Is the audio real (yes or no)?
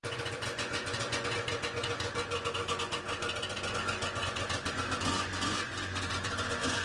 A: no